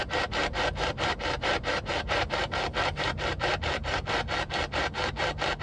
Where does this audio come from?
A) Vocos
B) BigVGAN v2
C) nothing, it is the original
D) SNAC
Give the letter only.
B